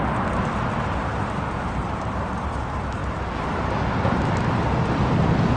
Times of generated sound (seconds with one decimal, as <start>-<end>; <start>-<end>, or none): 1.1-2.3